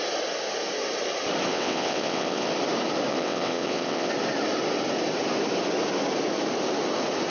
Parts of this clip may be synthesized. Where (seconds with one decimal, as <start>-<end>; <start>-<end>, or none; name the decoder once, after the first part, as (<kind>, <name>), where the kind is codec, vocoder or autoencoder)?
1.5-2.5 (vocoder, WaveNeXt); 3.1-4.1